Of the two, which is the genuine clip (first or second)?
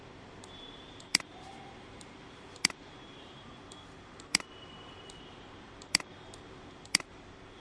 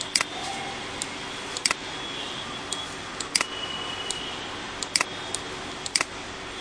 second